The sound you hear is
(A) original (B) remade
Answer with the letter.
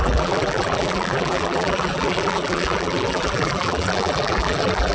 B